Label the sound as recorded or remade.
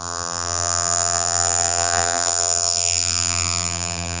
remade